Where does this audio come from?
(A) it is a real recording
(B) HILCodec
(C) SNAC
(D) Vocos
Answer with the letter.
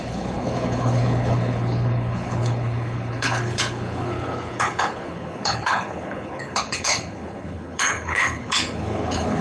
B